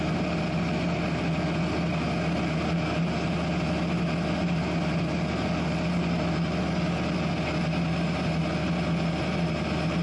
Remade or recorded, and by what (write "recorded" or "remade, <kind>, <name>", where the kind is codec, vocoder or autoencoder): recorded